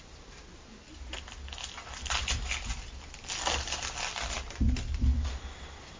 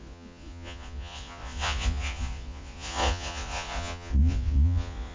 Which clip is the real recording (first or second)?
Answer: first